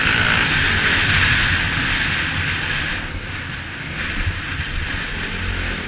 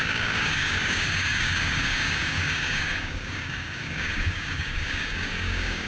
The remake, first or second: second